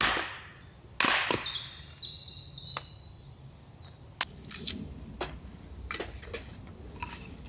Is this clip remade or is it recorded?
recorded